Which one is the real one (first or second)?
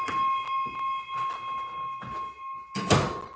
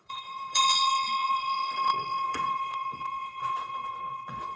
first